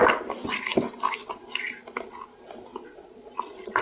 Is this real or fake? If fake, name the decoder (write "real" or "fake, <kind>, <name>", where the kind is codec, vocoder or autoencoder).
real